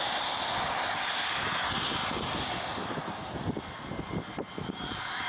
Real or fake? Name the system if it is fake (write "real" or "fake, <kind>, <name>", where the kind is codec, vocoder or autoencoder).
real